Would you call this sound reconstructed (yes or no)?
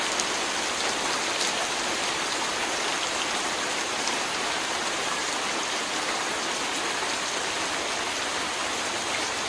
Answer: no